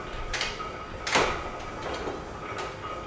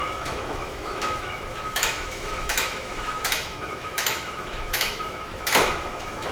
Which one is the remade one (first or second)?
second